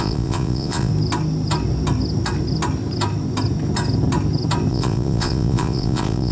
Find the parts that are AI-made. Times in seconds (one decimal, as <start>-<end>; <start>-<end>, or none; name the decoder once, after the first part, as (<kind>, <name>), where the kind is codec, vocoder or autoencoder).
0.0-0.9 (vocoder, Vocos); 4.7-6.3